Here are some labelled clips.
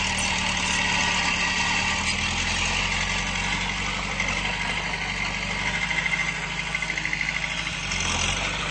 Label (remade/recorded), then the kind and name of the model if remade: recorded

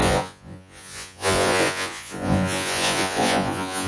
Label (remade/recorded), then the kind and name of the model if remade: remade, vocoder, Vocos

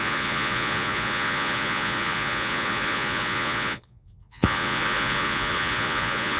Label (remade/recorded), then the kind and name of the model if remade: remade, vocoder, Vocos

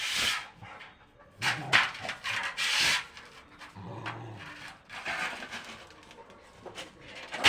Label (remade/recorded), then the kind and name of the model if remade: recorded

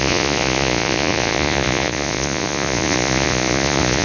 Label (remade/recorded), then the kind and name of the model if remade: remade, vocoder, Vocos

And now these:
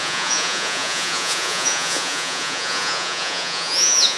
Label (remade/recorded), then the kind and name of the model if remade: remade, vocoder, Vocos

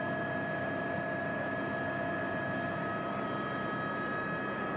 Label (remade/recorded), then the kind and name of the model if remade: recorded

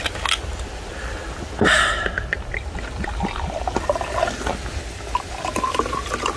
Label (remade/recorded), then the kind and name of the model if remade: recorded